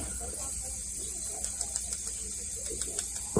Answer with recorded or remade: remade